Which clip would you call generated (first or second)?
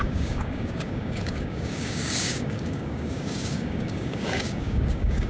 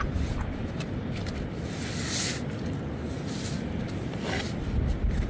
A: first